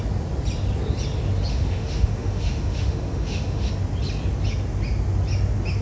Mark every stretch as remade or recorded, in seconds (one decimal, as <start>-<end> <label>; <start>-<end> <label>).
0.0-1.5 recorded; 1.5-3.7 remade; 3.7-5.8 recorded